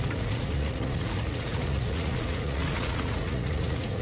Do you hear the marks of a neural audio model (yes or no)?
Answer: yes